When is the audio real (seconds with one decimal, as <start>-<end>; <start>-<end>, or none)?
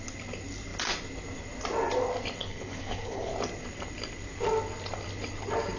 0.0-2.4; 3.3-5.8